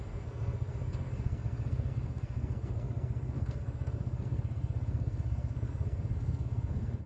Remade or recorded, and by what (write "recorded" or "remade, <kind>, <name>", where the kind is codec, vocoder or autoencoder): remade, codec, SNAC